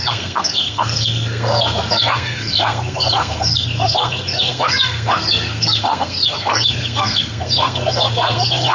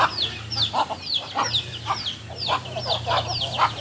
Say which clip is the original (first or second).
second